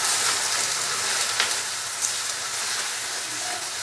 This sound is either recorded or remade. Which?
recorded